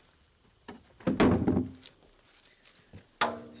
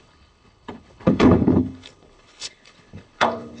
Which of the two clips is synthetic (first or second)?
second